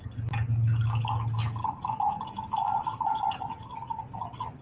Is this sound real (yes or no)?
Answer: yes